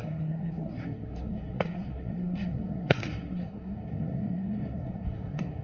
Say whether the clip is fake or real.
fake